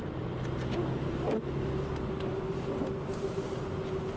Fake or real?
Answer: real